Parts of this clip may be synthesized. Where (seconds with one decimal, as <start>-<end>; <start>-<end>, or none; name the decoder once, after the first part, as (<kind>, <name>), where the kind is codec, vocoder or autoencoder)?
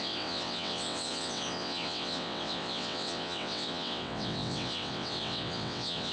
0.0-6.1 (vocoder, WaveNeXt)